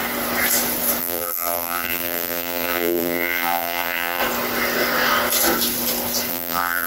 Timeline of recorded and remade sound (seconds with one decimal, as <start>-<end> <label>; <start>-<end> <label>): 0.0-1.0 recorded; 1.0-4.2 remade; 4.2-6.3 recorded; 6.3-6.9 remade